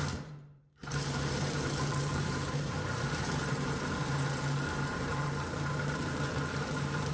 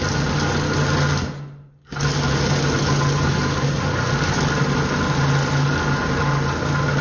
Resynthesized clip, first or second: first